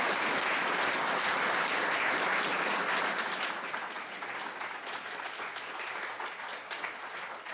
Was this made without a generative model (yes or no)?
yes